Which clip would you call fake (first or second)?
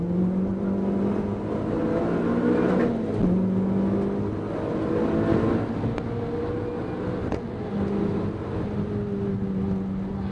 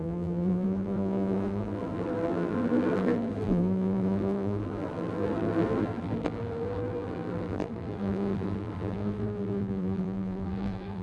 second